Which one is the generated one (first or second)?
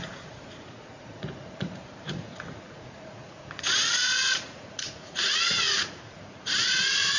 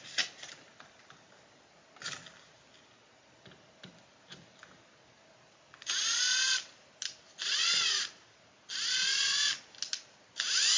first